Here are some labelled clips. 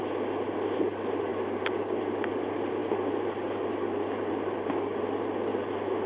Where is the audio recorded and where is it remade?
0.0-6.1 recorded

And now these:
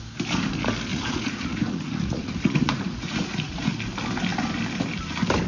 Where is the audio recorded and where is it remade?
0.0-0.9 recorded; 0.9-3.7 remade; 3.7-5.5 recorded